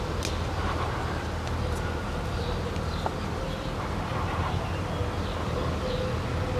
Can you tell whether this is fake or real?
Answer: real